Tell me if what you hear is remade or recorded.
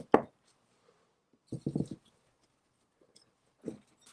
recorded